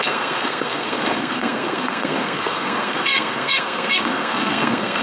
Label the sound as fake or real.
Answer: fake